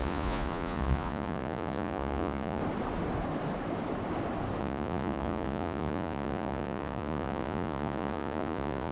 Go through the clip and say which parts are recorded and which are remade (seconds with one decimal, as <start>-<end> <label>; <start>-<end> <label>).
0.0-2.6 remade; 2.6-4.6 recorded; 4.6-8.9 remade